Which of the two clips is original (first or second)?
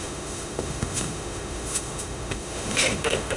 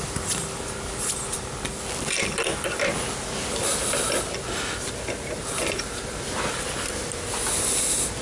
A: second